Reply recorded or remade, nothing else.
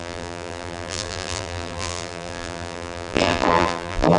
remade